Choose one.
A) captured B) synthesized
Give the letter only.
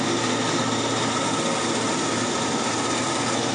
A